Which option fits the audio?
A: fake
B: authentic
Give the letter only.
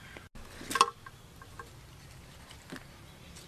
B